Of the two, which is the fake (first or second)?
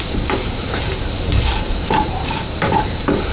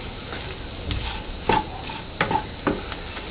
first